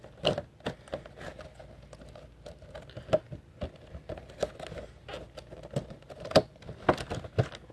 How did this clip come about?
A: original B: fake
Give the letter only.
A